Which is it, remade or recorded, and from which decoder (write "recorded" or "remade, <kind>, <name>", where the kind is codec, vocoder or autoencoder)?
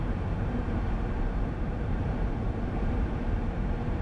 remade, vocoder, BigVGAN v2